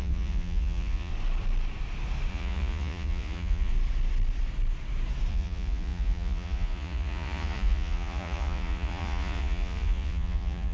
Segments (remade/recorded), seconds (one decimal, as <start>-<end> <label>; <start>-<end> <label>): 0.0-1.1 remade; 1.1-2.3 recorded; 2.3-3.7 remade; 3.7-5.3 recorded; 5.3-10.7 remade